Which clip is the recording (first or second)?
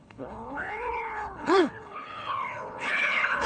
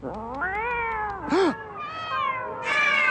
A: second